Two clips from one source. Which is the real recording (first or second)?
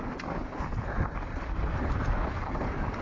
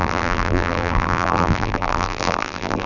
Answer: first